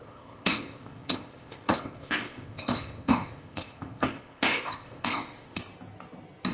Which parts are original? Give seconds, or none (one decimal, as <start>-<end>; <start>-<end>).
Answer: 5.6-6.5